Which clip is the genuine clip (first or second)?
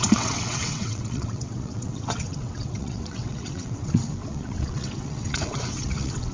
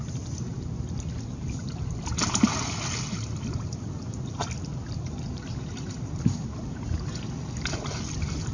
second